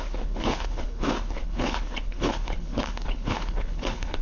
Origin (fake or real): fake